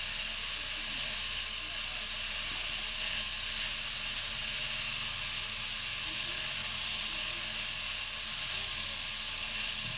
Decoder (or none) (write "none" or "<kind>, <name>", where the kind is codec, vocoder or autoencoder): none